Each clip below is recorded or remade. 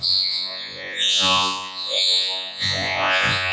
remade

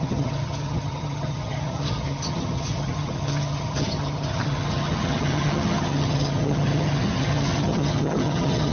remade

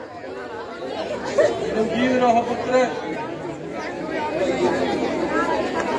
recorded